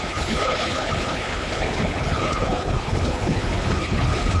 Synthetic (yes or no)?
yes